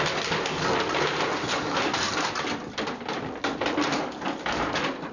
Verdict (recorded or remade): recorded